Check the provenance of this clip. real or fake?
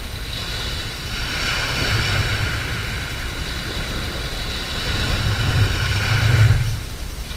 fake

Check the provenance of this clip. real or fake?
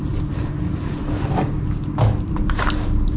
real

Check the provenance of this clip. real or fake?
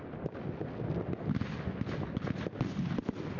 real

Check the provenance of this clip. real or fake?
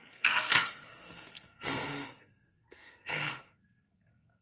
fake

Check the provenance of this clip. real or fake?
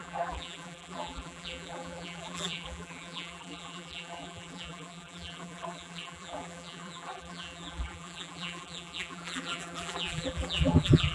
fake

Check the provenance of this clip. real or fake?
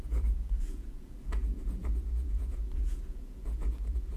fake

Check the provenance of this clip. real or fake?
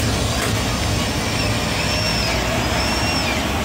real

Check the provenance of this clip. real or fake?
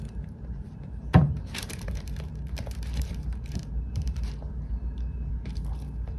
fake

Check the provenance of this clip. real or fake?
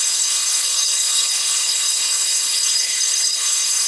fake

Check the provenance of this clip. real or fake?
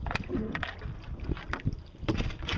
real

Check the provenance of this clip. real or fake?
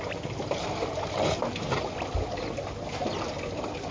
real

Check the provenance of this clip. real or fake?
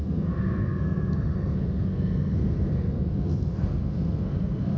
fake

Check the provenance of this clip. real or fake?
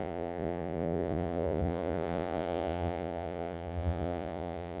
fake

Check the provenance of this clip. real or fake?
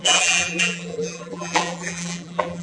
fake